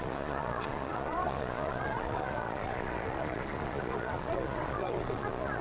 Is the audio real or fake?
fake